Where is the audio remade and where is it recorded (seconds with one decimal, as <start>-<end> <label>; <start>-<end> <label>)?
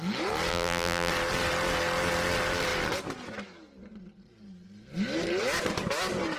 0.0-0.5 recorded; 0.5-1.1 remade; 1.1-6.4 recorded